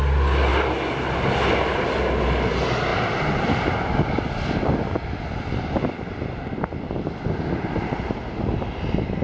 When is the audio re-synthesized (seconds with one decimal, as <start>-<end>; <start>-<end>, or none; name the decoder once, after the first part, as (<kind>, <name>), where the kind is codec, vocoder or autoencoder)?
none